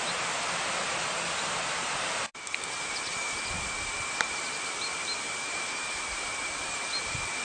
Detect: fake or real real